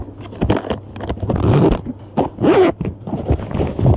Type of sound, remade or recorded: recorded